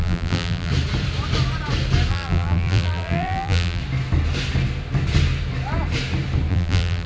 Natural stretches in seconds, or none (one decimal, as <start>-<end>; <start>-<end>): 0.7-2.1; 3.8-6.5